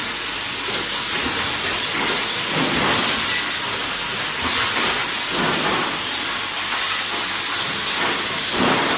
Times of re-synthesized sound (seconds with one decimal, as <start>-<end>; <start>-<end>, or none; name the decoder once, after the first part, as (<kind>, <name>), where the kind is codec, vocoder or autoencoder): none